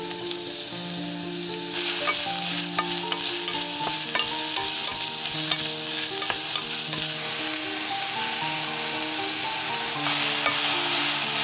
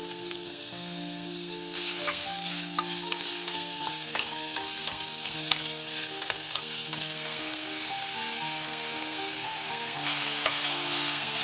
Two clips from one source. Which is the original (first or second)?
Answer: first